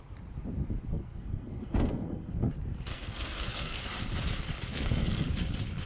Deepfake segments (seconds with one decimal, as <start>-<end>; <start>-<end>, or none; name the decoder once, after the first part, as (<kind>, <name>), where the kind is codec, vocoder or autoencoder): 0.9-2.5 (codec, SNAC); 2.9-3.8; 4.7-5.3